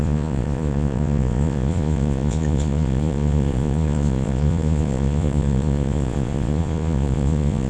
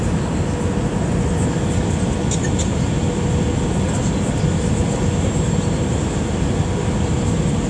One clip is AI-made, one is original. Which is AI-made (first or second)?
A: first